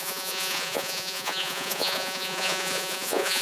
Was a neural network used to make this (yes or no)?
yes